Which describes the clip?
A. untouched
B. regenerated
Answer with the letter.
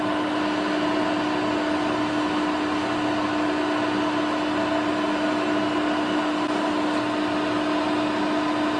A